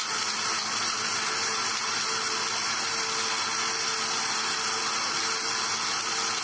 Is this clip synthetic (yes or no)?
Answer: no